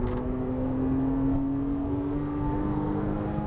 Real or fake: fake